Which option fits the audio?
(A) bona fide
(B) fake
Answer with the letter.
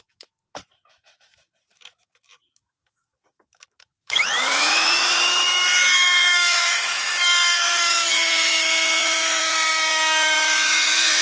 B